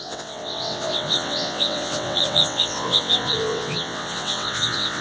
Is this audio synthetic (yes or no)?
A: yes